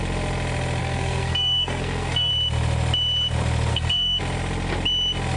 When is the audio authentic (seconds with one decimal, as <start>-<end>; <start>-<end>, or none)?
0.0-0.8; 2.3-3.7; 4.2-5.4